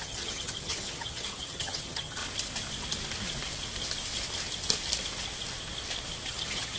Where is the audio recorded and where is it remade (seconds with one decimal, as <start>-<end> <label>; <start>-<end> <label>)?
0.0-2.2 remade; 2.2-6.3 recorded; 6.3-6.8 remade